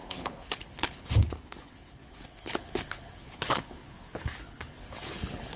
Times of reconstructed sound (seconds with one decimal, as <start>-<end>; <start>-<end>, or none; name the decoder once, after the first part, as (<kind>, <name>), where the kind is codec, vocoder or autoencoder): 0.0-5.6 (codec, HILCodec)